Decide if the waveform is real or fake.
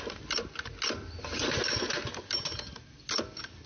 real